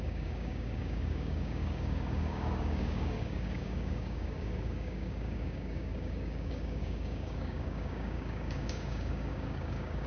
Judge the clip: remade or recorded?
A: remade